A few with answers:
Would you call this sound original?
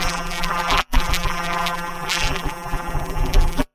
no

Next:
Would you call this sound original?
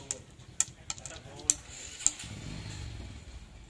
yes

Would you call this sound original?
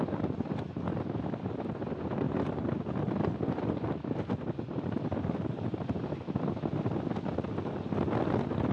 yes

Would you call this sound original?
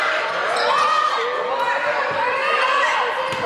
yes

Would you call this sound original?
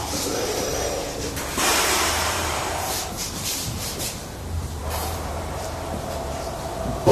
no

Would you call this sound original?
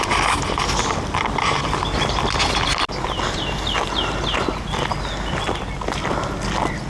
yes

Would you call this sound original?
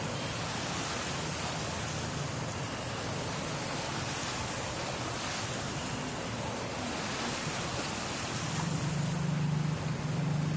yes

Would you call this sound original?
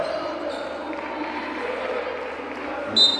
yes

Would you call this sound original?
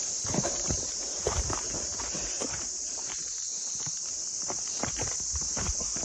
no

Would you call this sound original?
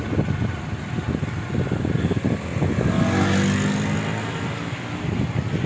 yes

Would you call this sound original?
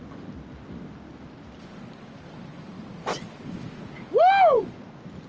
yes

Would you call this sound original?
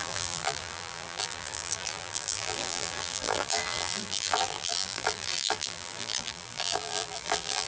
no